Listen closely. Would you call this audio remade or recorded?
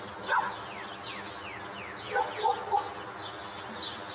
recorded